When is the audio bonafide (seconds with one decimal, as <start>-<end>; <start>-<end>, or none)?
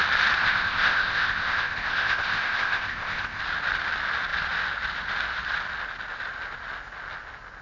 0.0-0.4; 3.4-7.6